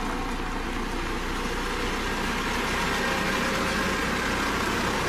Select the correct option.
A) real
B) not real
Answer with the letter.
A